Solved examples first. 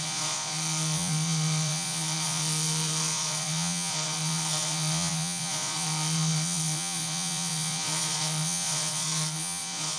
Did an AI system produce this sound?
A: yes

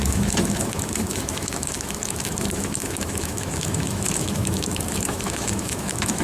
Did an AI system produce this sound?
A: yes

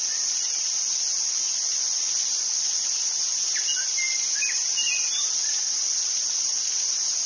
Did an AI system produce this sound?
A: no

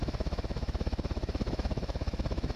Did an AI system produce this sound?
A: yes